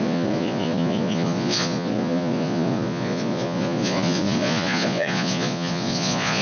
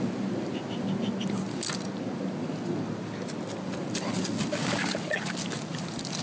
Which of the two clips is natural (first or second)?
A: second